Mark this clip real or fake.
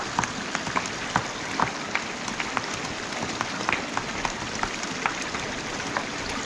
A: real